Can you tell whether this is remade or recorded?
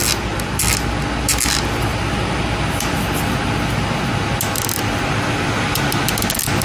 recorded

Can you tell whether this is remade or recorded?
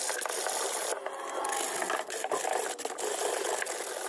recorded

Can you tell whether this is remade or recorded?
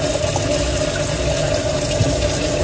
recorded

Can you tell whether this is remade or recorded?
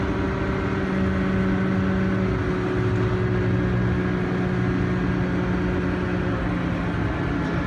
recorded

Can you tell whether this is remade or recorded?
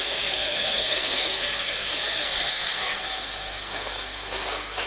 remade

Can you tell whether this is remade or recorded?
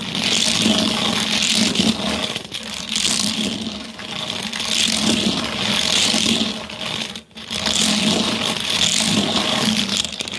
recorded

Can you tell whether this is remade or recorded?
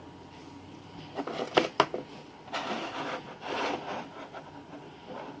recorded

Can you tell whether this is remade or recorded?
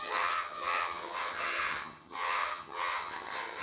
remade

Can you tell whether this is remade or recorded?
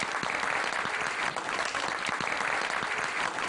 recorded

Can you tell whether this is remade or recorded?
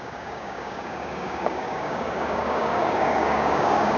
remade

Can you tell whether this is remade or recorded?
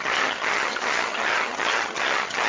remade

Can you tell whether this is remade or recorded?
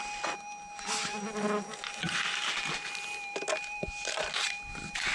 recorded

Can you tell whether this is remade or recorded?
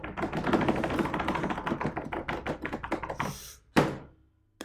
recorded